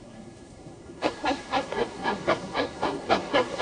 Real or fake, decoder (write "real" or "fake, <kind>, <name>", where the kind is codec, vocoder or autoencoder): fake, codec, SNAC